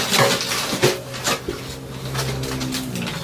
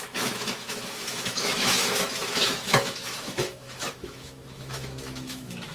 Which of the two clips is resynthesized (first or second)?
second